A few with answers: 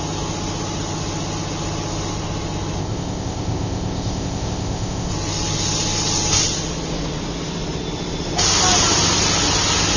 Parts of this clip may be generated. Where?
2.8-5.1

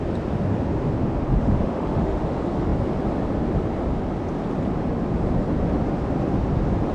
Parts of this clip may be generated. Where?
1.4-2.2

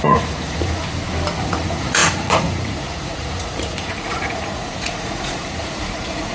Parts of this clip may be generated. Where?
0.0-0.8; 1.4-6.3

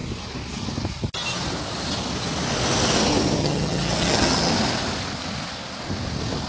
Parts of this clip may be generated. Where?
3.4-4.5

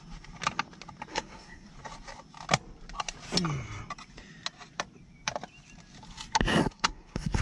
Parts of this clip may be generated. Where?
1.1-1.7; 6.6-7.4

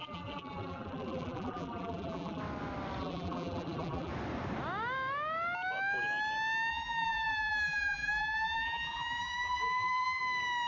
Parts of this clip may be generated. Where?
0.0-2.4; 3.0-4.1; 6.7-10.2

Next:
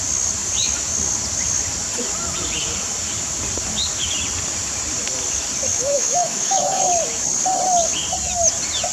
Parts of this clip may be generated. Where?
5.7-6.8

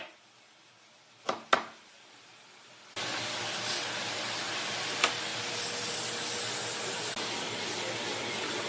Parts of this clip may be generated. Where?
none